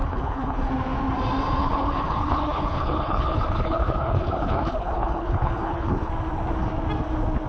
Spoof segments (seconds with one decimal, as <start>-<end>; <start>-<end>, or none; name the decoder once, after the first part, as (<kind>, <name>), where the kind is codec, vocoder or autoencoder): 0.0-0.7 (codec, HILCodec); 1.6-6.1